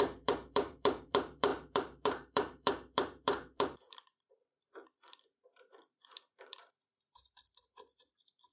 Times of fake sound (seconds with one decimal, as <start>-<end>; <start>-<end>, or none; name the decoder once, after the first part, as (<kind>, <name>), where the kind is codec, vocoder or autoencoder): 0.0-8.5 (vocoder, BigVGAN v2)